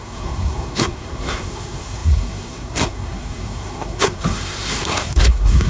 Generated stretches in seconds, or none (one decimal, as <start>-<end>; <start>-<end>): 0.0-5.7